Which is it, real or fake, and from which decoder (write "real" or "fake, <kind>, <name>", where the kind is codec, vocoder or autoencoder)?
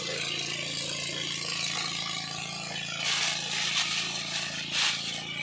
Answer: real